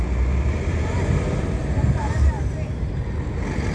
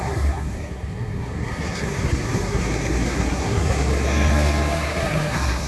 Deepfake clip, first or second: second